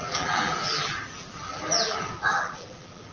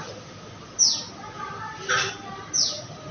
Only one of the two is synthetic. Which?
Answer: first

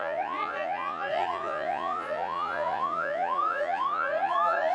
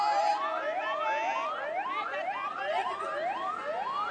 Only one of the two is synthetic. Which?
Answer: first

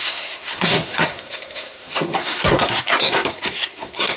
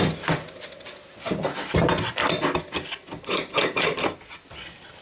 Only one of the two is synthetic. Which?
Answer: first